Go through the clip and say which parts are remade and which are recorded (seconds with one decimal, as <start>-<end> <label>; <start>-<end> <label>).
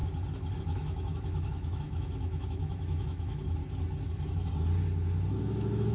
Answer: 0.0-0.6 recorded; 0.6-3.6 remade; 3.6-5.4 recorded; 5.4-5.9 remade